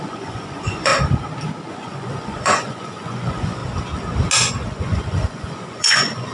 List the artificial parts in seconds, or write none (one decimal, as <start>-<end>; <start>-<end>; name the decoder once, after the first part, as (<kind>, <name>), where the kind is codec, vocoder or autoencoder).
0.0-0.9 (vocoder, Vocos); 1.7-3.6; 4.5-6.3